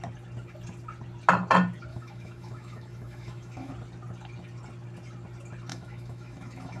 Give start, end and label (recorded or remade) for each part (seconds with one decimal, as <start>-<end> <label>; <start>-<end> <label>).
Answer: 0.0-1.9 recorded; 1.9-3.7 remade; 3.7-5.7 recorded; 5.7-6.8 remade